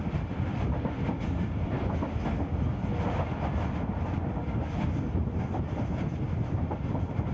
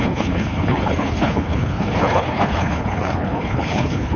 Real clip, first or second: first